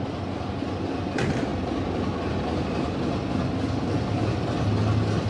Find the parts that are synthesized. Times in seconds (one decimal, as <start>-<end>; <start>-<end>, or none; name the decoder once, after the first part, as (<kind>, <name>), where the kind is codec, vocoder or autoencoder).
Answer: none